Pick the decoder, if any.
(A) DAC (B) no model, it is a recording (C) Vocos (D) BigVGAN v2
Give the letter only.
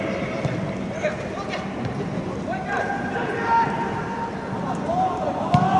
B